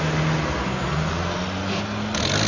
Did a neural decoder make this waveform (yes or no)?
no